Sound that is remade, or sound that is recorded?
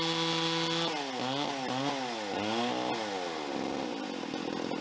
recorded